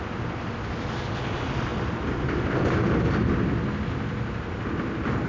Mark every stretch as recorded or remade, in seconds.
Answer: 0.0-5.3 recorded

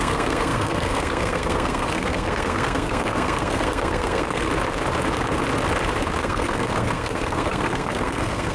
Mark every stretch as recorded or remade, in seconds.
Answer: 0.0-4.5 remade; 4.5-6.2 recorded; 6.2-8.5 remade

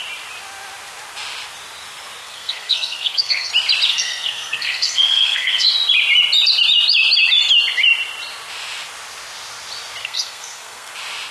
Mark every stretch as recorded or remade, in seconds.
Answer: 0.0-2.2 recorded; 2.2-3.5 remade; 3.5-3.9 recorded; 3.9-5.7 remade; 5.7-10.0 recorded; 10.0-10.9 remade; 10.9-11.3 recorded

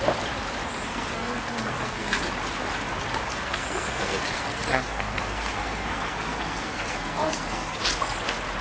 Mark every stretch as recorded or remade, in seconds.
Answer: 0.0-0.9 recorded; 0.9-2.2 remade; 2.2-3.3 recorded; 3.3-7.8 remade; 7.8-8.6 recorded

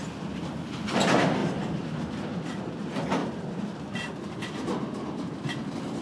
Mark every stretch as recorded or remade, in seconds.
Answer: 0.0-6.0 recorded